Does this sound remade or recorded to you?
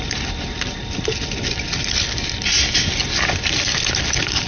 recorded